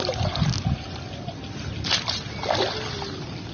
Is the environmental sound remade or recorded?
recorded